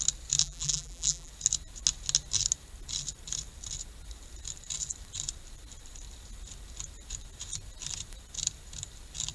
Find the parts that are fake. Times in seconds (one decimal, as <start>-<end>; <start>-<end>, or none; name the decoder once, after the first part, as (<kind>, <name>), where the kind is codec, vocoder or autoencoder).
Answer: 0.4-1.3 (vocoder, BigVGAN v2)